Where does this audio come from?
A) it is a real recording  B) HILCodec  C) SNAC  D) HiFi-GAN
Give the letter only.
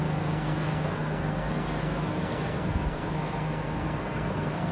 C